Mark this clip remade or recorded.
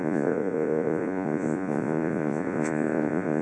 remade